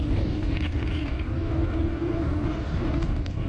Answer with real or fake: fake